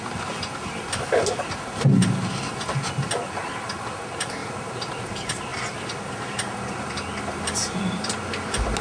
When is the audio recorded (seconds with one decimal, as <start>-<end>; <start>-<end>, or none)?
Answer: 0.0-4.4; 5.0-5.5; 7.8-8.8